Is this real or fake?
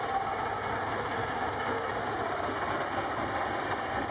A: real